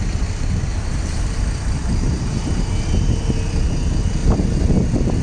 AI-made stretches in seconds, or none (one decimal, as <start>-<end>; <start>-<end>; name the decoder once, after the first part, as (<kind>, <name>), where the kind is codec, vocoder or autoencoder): 0.7-2.7 (vocoder, BigVGAN v2); 4.2-4.7